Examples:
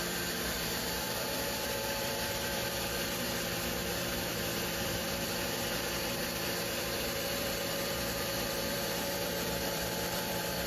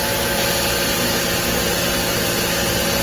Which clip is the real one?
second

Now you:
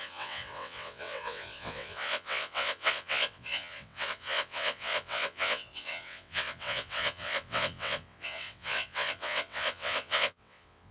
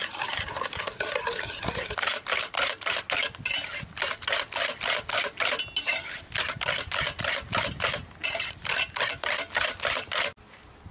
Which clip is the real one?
second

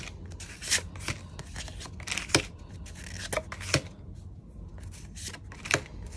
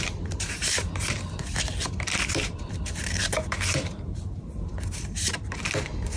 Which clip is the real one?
first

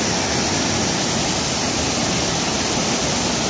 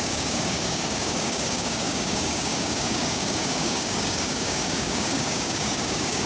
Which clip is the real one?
first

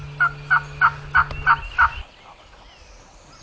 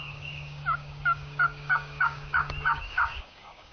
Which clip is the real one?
first